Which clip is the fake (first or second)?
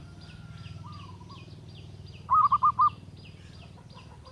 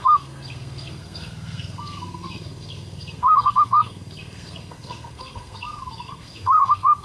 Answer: second